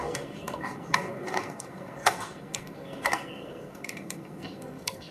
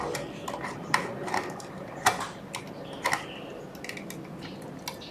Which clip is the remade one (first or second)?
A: first